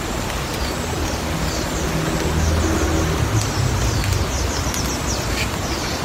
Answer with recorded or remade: recorded